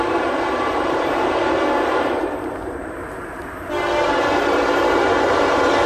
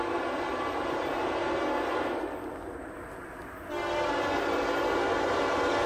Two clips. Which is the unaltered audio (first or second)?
second